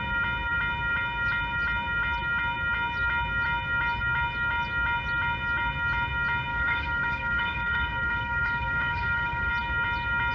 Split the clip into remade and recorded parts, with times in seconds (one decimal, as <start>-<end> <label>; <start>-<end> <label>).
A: 0.0-6.5 recorded; 6.5-9.5 remade; 9.5-10.3 recorded